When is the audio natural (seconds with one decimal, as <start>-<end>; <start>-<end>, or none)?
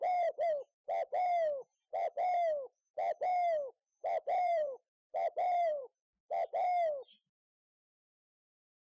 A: 0.0-4.0; 6.3-8.9